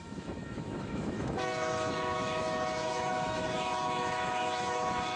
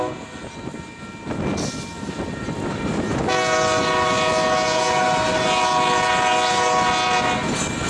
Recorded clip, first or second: second